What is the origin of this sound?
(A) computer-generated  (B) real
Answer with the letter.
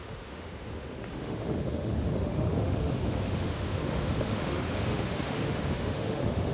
A